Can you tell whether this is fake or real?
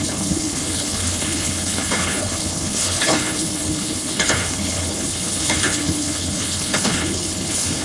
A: fake